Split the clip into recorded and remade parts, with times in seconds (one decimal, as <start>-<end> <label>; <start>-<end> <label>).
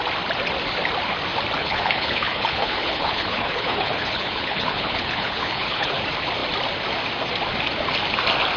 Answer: 0.0-1.6 recorded; 1.6-6.0 remade; 6.0-8.6 recorded